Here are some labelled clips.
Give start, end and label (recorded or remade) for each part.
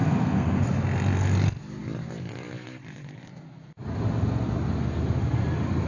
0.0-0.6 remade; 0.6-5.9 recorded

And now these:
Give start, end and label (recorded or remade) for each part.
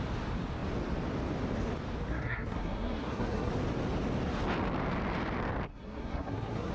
0.0-2.1 recorded; 2.1-3.5 remade; 3.5-5.7 recorded; 5.7-6.7 remade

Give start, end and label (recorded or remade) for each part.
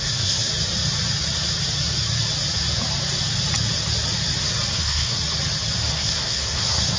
0.0-0.5 remade; 0.5-4.7 recorded; 4.7-5.2 remade; 5.2-5.9 recorded; 5.9-7.0 remade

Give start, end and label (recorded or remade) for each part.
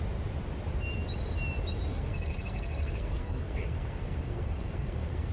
0.0-1.9 recorded; 1.9-5.3 remade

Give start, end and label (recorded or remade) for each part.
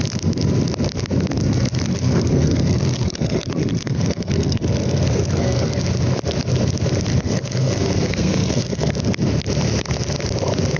0.0-1.9 recorded; 1.9-5.8 remade; 5.8-7.1 recorded; 7.1-8.9 remade; 8.9-10.8 recorded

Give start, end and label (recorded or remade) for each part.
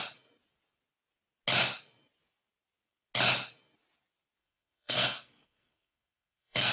0.0-4.4 recorded; 4.4-6.7 remade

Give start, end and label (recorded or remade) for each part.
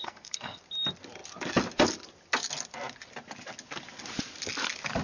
0.0-0.6 remade; 0.6-5.0 recorded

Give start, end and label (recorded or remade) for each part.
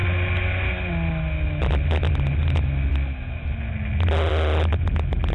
0.0-5.3 recorded